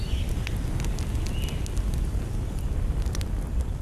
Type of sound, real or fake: real